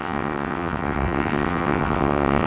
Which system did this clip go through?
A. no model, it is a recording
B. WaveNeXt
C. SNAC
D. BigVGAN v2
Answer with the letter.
B